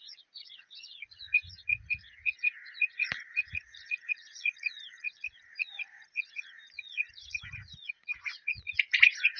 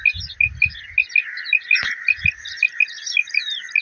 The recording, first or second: second